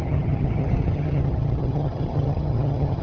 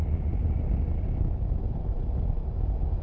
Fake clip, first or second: first